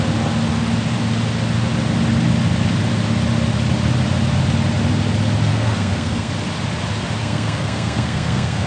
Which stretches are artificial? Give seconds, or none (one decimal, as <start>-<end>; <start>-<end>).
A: 5.5-6.3; 7.2-8.7